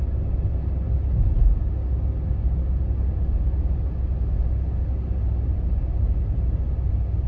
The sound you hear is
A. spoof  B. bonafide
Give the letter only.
B